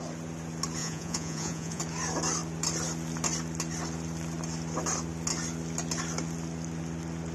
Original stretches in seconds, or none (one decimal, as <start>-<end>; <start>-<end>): 0.0-0.8; 1.8-7.3